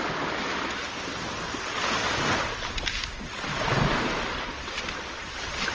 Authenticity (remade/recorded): recorded